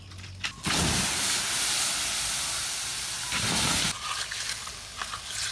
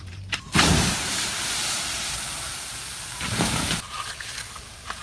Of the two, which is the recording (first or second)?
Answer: first